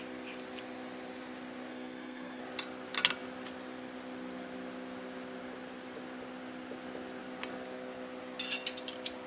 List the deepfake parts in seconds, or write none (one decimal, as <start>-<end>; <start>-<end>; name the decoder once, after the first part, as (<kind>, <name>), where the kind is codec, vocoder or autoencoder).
1.7-2.4 (codec, SNAC)